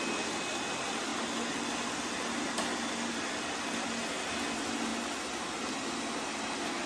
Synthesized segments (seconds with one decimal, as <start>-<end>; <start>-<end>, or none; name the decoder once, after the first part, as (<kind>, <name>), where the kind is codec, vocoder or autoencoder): none